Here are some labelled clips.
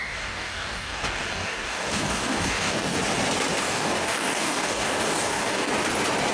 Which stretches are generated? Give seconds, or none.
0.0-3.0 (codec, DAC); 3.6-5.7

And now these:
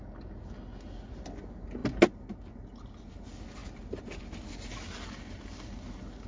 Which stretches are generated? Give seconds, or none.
none

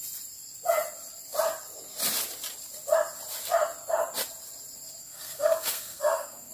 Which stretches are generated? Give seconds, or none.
5.0-6.5 (codec, SNAC)